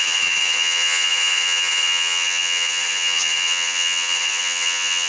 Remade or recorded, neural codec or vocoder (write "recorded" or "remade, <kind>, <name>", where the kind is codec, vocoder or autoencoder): remade, vocoder, HiFi-GAN